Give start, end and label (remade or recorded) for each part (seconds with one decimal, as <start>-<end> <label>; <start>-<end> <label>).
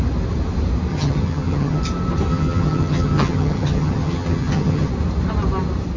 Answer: 0.0-0.9 recorded; 0.9-1.8 remade; 1.8-2.3 recorded; 2.3-4.9 remade; 4.9-6.0 recorded